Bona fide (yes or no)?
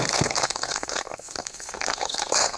no